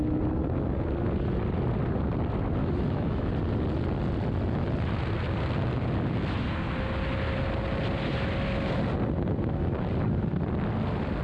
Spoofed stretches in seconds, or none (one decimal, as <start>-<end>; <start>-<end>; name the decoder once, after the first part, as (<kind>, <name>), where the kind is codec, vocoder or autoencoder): 2.6-3.3 (autoencoder, DAC-VAE)